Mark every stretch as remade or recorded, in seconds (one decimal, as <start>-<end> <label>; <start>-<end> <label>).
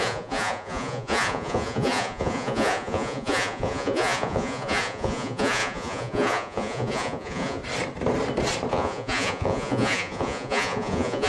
0.0-7.6 remade; 7.6-8.7 recorded; 8.7-11.3 remade